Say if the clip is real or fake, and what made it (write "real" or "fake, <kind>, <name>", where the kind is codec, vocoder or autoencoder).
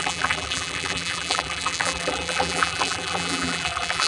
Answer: fake, vocoder, BigVGAN v2